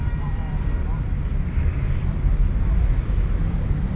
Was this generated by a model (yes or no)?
no